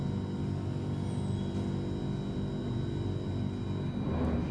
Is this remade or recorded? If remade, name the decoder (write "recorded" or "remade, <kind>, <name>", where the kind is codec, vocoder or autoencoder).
recorded